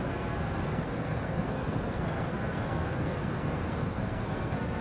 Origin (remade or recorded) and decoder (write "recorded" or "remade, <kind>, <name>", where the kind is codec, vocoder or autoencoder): remade, codec, SNAC